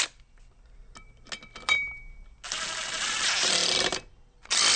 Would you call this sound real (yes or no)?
yes